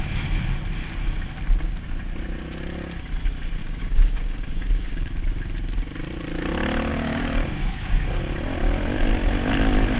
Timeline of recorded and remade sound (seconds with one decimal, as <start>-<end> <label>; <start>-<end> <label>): 0.0-3.6 recorded; 3.6-5.2 remade; 5.2-6.9 recorded; 6.9-8.2 remade; 8.2-10.0 recorded